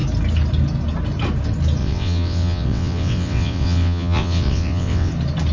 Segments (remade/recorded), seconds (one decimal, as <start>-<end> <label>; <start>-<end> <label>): 0.0-1.8 recorded; 1.8-5.1 remade; 5.1-5.5 recorded